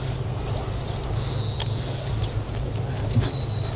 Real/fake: real